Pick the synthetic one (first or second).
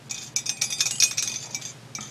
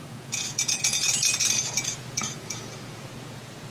second